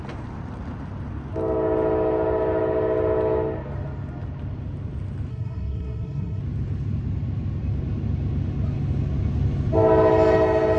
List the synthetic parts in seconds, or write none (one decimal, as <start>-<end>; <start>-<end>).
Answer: 5.3-6.4